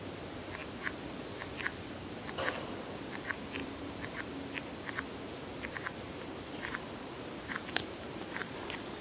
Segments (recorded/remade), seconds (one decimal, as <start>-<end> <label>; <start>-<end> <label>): 0.0-3.6 recorded; 3.6-4.2 remade; 4.2-5.5 recorded; 5.5-9.0 remade